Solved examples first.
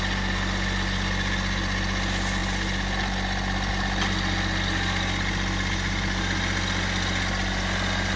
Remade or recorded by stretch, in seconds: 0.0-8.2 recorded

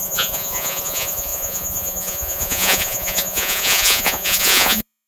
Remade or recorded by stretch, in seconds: 0.0-5.1 remade

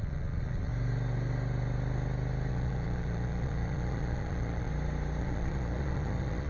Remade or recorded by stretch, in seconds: 0.0-0.7 remade; 0.7-2.5 recorded; 2.5-4.7 remade; 4.7-5.2 recorded; 5.2-6.5 remade

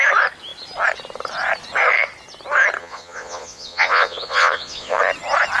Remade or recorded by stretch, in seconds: 0.0-2.8 recorded; 2.8-5.0 remade; 5.0-5.6 recorded

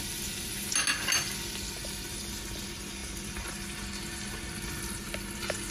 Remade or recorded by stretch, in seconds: 0.0-5.7 recorded

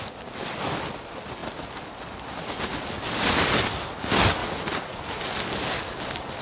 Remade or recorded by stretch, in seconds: 0.0-4.4 recorded; 4.4-5.2 remade; 5.2-6.4 recorded